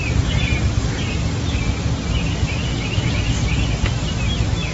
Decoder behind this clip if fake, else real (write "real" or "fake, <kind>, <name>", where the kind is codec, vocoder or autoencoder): real